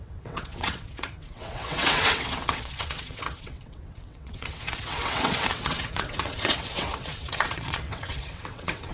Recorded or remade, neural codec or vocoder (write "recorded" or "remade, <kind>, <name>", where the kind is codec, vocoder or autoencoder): remade, vocoder, WaveNeXt